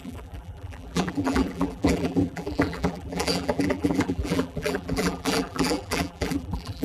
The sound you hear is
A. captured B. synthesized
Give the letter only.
B